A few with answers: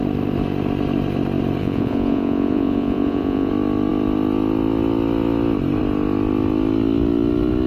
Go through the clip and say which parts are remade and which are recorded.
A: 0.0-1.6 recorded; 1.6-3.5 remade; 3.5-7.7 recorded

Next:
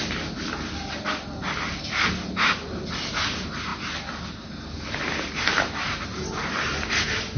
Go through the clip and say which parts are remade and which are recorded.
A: 0.0-7.4 recorded

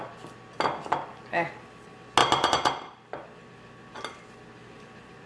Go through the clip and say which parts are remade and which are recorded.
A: 0.0-5.3 recorded

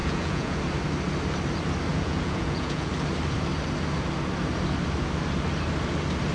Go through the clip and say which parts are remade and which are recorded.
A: 0.0-0.6 remade; 0.6-1.9 recorded; 1.9-2.9 remade; 2.9-6.3 recorded